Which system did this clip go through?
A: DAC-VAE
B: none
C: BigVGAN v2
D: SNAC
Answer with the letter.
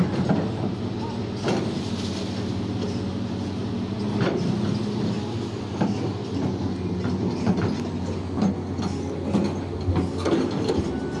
B